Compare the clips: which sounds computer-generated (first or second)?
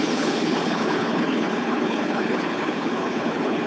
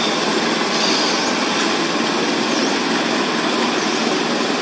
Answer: first